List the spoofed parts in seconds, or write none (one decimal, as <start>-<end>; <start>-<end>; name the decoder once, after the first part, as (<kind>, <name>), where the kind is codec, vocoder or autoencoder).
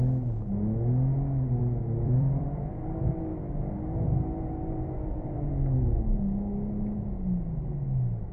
1.6-2.6 (vocoder, BigVGAN v2)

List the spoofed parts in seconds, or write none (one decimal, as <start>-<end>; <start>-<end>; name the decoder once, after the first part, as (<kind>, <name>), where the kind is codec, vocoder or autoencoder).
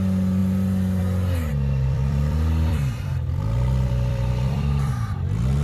0.4-1.0 (vocoder, BigVGAN v2); 1.5-4.9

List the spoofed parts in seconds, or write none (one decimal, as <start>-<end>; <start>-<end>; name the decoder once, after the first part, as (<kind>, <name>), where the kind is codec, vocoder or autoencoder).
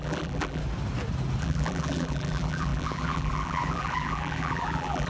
0.0-0.6 (vocoder, BigVGAN v2); 1.4-5.1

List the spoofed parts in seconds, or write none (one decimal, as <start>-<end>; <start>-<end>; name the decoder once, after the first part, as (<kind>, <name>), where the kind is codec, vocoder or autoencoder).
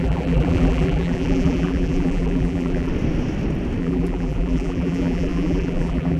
0.0-2.9 (vocoder, BigVGAN v2); 3.8-6.2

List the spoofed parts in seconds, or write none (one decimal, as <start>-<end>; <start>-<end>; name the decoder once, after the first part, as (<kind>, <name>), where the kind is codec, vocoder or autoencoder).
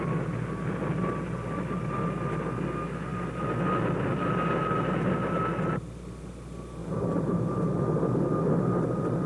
6.8-7.8 (vocoder, BigVGAN v2)